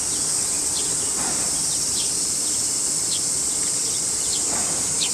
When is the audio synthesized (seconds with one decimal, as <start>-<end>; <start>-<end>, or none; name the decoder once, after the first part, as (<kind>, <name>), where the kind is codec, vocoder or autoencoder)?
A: 1.1-2.7 (vocoder, BigVGAN v2)

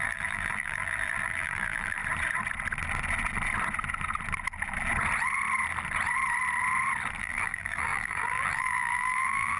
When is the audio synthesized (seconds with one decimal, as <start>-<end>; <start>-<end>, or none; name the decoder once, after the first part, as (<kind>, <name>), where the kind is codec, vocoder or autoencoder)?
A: 0.0-2.0 (vocoder, BigVGAN v2); 7.2-9.6

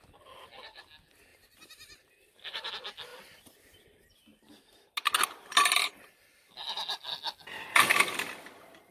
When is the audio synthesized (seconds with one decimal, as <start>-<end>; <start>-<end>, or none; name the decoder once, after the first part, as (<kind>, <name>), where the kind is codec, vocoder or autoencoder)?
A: 1.3-2.7 (vocoder, BigVGAN v2)

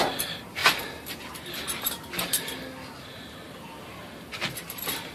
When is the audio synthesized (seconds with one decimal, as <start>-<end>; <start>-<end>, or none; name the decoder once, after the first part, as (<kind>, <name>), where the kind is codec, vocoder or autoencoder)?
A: 0.6-3.7 (vocoder, BigVGAN v2)

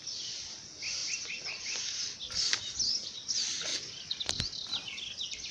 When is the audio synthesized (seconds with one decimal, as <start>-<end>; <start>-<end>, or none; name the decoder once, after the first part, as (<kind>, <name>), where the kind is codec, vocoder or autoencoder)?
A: 3.7-4.3 (vocoder, BigVGAN v2)